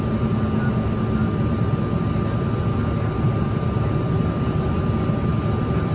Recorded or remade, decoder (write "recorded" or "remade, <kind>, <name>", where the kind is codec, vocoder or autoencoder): recorded